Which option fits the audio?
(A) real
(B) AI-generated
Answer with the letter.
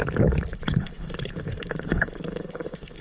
B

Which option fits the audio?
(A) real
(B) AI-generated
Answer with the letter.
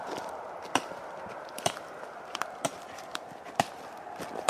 B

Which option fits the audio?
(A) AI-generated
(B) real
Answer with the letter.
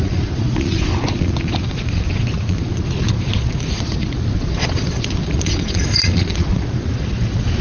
A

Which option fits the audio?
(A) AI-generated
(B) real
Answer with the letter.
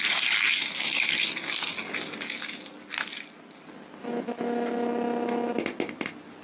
B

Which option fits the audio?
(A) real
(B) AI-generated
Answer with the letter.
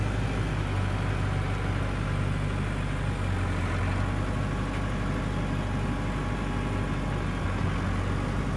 A